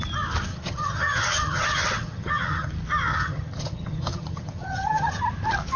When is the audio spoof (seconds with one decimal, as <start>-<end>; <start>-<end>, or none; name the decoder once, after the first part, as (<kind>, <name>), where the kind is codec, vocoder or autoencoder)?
0.5-2.7 (vocoder, HiFi-GAN); 3.1-5.2